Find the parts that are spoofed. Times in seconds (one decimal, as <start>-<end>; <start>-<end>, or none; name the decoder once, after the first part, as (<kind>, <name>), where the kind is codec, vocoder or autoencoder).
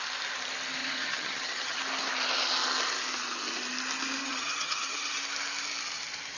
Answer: 0.8-1.8 (vocoder, HiFi-GAN); 4.2-5.2